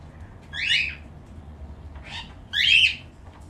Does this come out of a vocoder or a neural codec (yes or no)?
yes